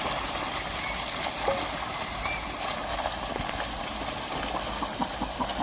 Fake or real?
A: real